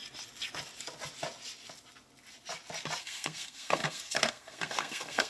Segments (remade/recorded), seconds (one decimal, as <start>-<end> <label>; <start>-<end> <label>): 0.0-3.0 recorded; 3.0-5.3 remade